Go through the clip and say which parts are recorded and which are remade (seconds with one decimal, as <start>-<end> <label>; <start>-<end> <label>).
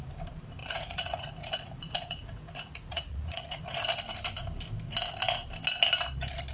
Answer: 0.0-0.6 recorded; 0.6-3.6 remade; 3.6-6.5 recorded